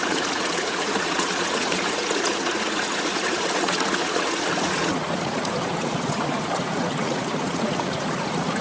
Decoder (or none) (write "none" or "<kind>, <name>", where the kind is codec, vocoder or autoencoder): vocoder, Vocos